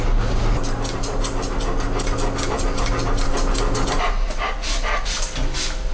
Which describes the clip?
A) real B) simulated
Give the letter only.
A